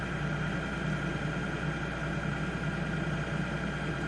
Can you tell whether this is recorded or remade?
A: recorded